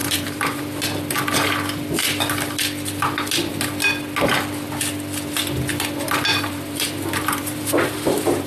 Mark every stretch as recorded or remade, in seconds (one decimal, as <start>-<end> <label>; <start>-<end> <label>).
0.0-0.6 remade; 0.6-6.3 recorded; 6.3-8.5 remade